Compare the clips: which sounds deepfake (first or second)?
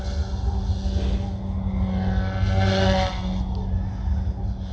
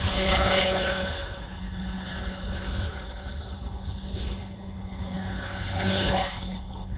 second